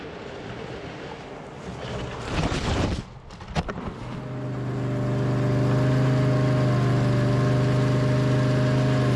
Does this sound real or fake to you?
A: real